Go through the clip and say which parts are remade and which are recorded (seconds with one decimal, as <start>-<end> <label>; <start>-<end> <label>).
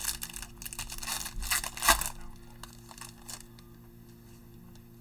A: 0.0-5.0 recorded